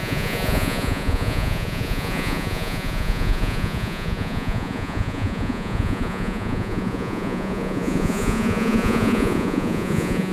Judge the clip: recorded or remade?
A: remade